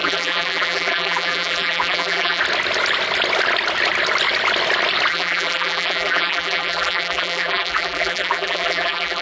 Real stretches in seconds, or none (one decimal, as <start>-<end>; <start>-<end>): 2.4-5.1